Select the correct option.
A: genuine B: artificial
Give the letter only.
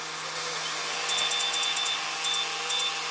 A